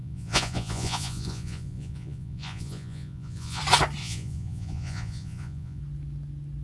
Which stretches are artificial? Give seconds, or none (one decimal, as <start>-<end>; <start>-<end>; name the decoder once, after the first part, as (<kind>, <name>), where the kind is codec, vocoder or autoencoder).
0.0-3.6 (vocoder, Vocos); 4.0-5.8